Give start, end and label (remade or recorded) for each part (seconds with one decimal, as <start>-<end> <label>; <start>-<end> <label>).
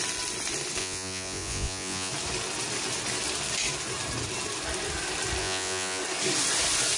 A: 0.0-0.8 recorded; 0.8-2.1 remade; 2.1-5.4 recorded; 5.4-6.0 remade; 6.0-7.0 recorded